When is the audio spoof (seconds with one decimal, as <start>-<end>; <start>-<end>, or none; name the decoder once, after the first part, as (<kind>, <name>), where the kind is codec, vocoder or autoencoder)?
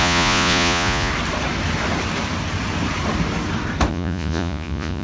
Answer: 0.0-1.1 (vocoder, Vocos); 3.9-5.0